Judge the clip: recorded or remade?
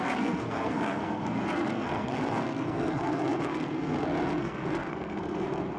remade